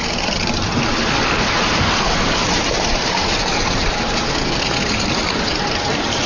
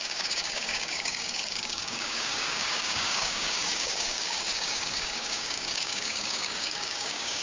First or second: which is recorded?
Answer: first